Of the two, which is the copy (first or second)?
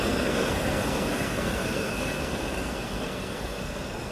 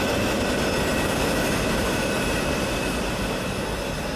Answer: first